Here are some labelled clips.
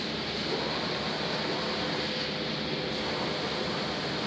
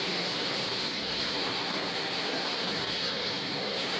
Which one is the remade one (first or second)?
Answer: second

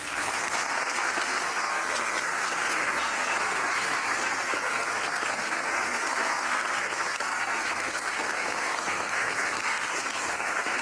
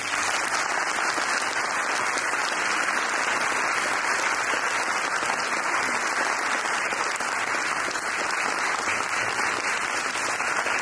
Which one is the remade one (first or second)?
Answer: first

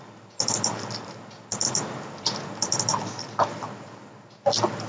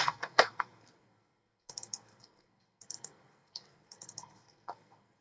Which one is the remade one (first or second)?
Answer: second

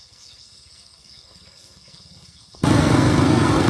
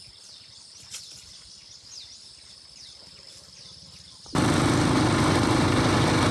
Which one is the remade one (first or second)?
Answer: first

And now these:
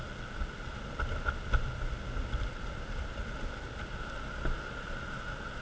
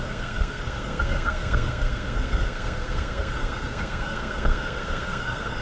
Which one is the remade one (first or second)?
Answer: second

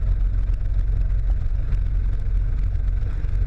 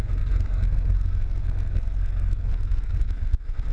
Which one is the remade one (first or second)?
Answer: second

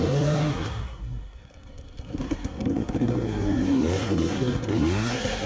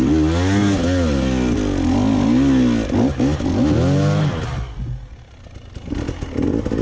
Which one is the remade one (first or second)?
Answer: first